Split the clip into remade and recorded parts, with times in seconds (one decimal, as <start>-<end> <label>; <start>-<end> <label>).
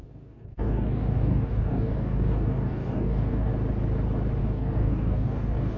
0.0-3.5 remade; 3.5-4.4 recorded; 4.4-5.8 remade